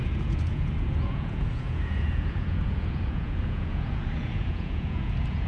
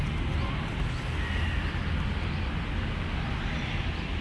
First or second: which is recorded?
second